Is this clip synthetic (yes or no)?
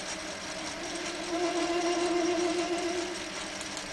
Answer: no